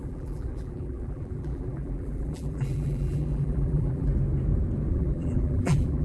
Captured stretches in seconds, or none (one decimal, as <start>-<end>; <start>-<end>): 4.1-4.9